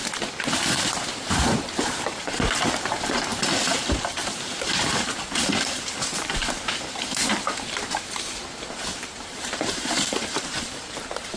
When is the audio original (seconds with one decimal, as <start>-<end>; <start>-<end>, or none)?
0.0-0.8